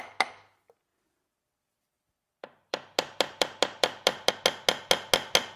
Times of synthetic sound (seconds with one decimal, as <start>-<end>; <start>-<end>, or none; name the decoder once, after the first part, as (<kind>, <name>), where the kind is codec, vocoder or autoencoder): 0.9-4.3 (vocoder, BigVGAN v2)